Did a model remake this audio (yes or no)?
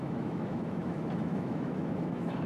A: yes